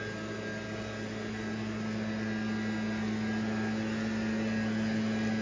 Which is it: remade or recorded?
recorded